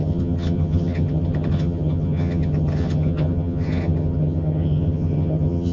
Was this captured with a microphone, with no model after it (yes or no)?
no